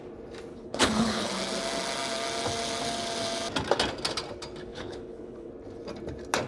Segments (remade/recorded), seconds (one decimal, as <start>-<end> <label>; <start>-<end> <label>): 0.0-0.5 recorded; 0.5-1.3 remade; 1.3-4.7 recorded; 4.7-5.5 remade; 5.5-6.5 recorded